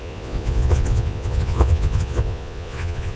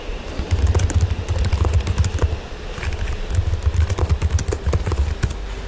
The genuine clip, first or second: second